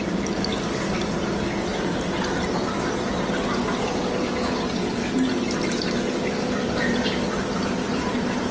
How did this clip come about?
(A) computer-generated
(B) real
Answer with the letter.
B